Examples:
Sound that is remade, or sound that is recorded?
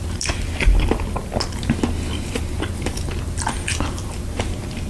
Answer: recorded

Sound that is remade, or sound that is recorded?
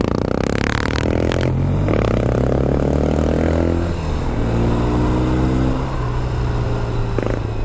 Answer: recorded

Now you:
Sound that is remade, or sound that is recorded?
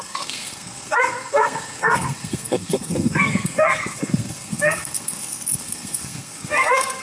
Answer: remade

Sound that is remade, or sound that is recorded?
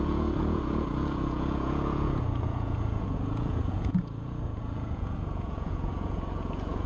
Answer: remade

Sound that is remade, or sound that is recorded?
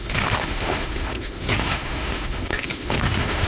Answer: remade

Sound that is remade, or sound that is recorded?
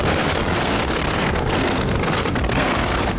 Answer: remade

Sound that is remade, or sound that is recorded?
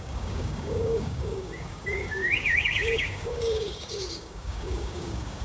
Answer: remade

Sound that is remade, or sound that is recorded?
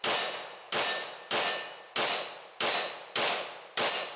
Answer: recorded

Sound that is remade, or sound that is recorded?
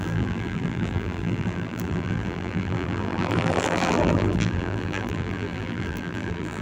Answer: remade